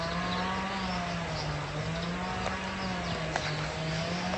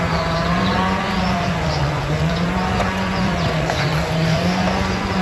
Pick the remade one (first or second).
second